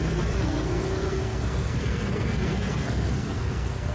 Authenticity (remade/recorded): remade